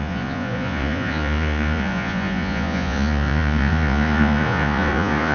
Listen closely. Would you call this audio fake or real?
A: fake